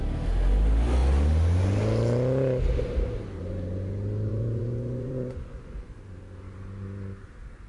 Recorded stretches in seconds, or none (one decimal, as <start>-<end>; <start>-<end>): 0.0-4.3; 5.9-7.7